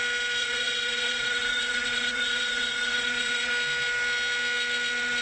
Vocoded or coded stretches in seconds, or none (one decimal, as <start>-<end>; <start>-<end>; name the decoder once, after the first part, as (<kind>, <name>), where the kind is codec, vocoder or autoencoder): 0.4-3.5 (vocoder, WaveNeXt)